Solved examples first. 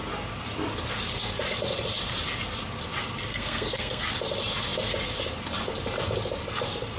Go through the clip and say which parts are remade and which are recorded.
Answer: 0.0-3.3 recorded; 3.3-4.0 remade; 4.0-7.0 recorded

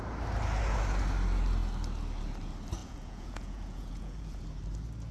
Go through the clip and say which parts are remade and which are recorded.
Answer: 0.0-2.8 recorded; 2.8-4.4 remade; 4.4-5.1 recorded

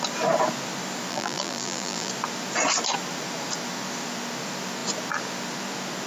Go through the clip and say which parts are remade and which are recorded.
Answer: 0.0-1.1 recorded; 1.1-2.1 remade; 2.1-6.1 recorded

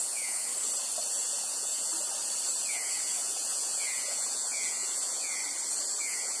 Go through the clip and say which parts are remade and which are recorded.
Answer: 0.0-0.5 remade; 0.5-1.1 recorded; 1.1-1.9 remade; 1.9-2.7 recorded; 2.7-5.4 remade; 5.4-6.0 recorded; 6.0-6.4 remade